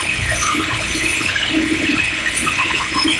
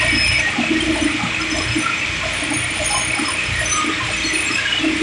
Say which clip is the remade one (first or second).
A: first